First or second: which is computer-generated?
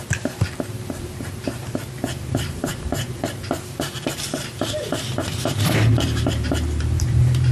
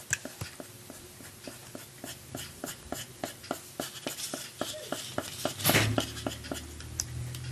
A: first